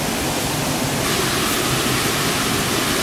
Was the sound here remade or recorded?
recorded